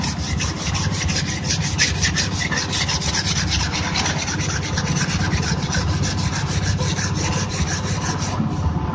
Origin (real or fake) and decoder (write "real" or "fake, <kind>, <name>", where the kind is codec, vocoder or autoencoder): real